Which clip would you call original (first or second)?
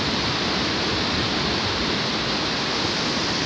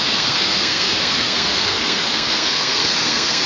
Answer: first